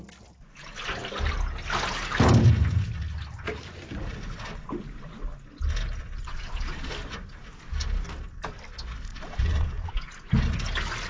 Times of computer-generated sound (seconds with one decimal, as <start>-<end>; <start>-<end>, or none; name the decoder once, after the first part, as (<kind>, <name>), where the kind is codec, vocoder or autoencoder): 6.2-6.9 (vocoder, Vocos); 9.1-9.9